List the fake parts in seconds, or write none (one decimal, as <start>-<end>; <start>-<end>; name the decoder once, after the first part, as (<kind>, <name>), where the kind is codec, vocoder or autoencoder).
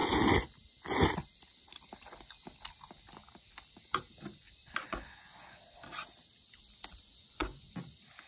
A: 4.4-5.6 (vocoder, Vocos); 7.1-7.7